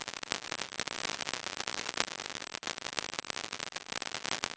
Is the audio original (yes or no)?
yes